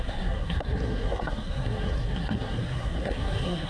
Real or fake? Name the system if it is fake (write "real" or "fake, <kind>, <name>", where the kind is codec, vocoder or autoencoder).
fake, codec, SNAC